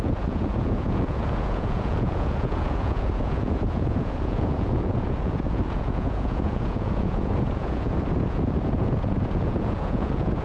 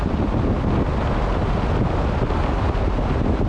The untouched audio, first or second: second